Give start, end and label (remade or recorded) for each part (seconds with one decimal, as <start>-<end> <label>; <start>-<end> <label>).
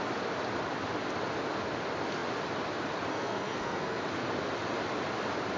0.0-3.1 recorded; 3.1-4.0 remade; 4.0-5.6 recorded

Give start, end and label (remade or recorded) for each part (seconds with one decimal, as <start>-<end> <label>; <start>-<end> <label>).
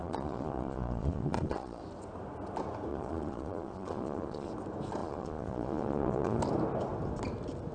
0.0-1.8 remade; 1.8-2.9 recorded; 2.9-4.5 remade; 4.5-5.0 recorded; 5.0-6.4 remade; 6.4-7.7 recorded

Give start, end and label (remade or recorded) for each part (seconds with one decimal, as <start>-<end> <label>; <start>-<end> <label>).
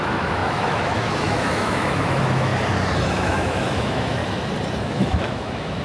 0.0-2.5 remade; 2.5-3.1 recorded; 3.1-4.2 remade; 4.2-4.8 recorded; 4.8-5.8 remade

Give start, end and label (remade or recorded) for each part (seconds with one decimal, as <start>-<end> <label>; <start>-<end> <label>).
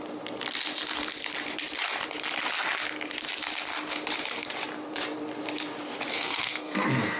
0.0-6.1 recorded; 6.1-7.2 remade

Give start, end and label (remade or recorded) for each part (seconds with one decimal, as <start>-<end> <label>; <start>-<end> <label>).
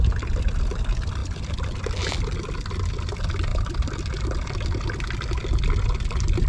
0.0-3.5 recorded; 3.5-4.4 remade; 4.4-6.5 recorded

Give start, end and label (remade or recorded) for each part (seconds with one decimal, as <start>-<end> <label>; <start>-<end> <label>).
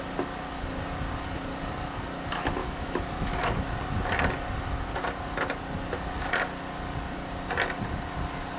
0.0-2.6 recorded; 2.6-3.4 remade; 3.4-8.6 recorded